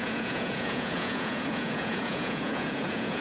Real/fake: fake